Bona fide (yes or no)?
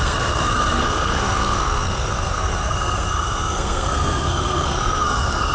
no